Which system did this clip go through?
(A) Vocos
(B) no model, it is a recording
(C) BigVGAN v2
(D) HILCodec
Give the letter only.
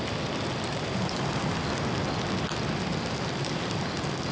B